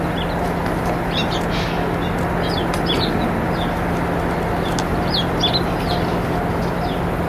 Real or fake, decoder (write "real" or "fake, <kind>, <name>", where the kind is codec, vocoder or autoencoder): real